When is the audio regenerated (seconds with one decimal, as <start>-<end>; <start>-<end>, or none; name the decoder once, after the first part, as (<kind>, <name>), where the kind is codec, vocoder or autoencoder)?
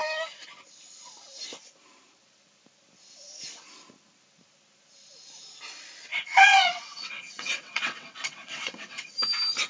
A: 6.1-9.1 (vocoder, WaveNeXt)